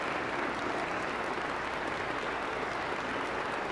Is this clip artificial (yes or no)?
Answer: no